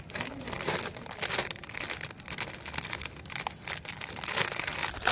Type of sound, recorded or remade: recorded